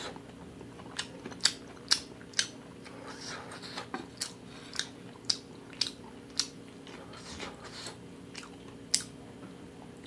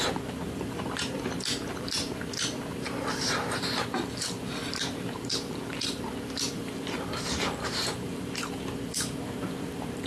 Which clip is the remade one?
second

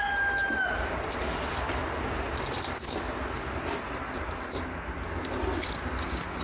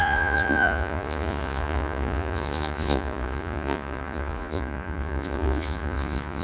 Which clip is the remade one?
second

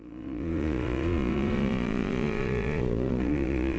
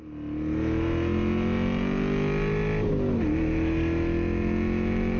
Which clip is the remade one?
first